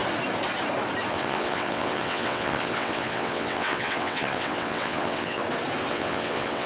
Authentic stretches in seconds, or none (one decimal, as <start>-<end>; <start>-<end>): 0.0-1.1; 5.4-5.9